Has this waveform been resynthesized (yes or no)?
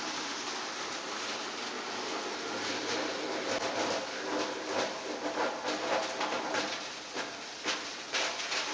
no